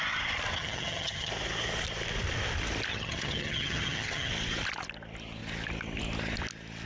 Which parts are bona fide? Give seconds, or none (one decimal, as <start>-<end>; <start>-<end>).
0.0-0.6; 1.3-2.9; 4.3-6.9